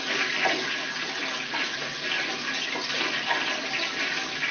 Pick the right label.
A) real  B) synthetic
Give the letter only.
A